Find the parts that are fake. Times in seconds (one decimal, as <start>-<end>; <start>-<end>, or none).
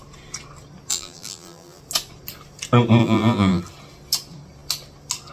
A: 0.9-1.8; 3.0-3.6